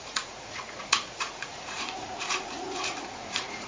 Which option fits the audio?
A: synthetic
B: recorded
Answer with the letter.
A